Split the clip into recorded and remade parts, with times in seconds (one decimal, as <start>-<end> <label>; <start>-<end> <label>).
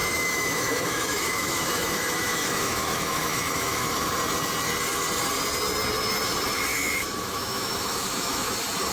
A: 0.0-4.1 remade; 4.1-6.7 recorded; 6.7-8.5 remade; 8.5-8.9 recorded